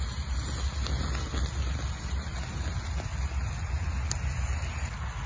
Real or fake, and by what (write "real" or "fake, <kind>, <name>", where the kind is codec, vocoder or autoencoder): real